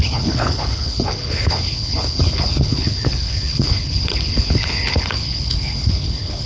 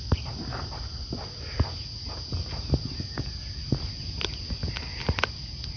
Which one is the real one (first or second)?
second